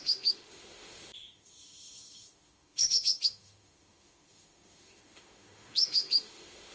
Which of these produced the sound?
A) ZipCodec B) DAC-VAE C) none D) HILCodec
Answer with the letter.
B